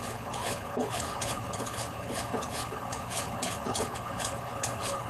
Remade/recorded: remade